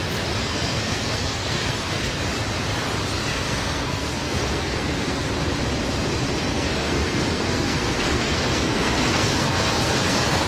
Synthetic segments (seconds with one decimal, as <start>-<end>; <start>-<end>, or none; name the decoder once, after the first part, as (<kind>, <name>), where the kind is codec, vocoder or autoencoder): 0.4-2.2 (codec, SNAC); 3.3-5.3; 6.5-10.5